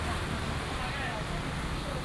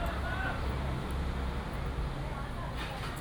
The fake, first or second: first